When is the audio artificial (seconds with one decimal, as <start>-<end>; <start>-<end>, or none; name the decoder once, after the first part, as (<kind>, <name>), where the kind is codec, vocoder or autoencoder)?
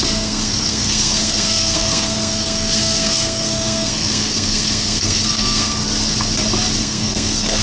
0.0-5.8 (codec, SNAC); 6.8-7.6